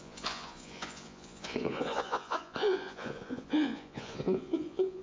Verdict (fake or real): fake